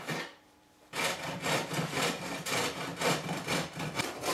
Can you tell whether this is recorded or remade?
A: remade